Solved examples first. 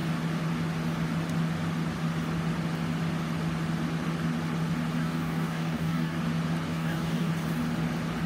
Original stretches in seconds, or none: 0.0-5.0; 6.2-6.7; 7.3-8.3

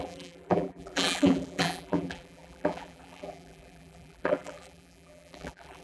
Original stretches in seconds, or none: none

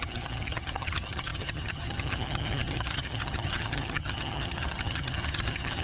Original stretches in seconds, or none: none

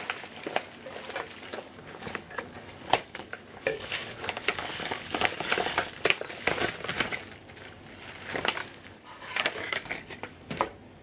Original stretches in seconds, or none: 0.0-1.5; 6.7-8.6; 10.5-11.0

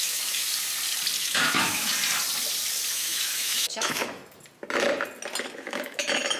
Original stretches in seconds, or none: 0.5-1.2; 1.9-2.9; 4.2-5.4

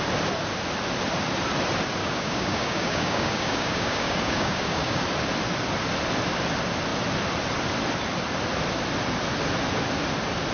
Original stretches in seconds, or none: 0.0-2.0; 5.0-10.5

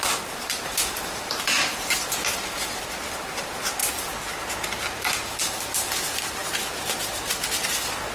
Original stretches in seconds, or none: 1.7-2.3; 3.8-5.1

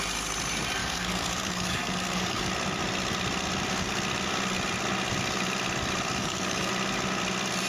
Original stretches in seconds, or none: 0.0-0.8; 2.5-6.2; 6.7-7.7